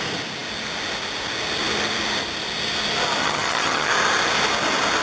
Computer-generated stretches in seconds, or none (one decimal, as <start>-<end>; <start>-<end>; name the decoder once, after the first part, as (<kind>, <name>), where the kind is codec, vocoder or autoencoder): 3.2-3.9 (vocoder, HiFi-GAN)